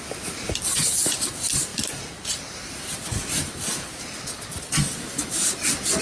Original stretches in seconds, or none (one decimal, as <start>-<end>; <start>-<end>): 0.0-6.0